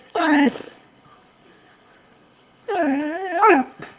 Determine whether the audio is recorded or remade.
remade